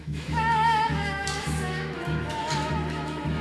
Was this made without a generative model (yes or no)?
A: no